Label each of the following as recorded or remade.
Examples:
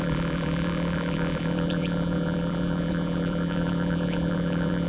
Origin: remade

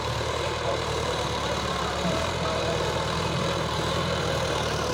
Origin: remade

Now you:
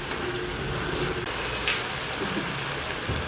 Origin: recorded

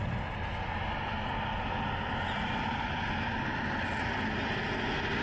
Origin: recorded